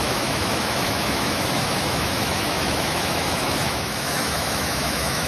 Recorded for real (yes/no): no